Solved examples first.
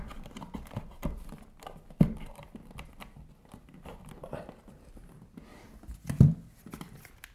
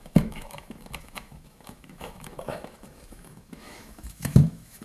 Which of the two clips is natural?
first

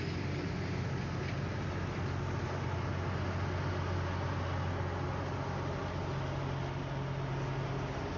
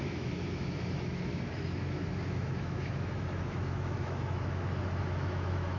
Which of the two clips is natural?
first